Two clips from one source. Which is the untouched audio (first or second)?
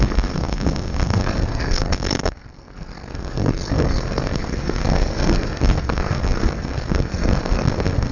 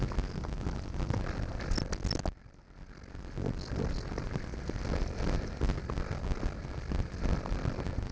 second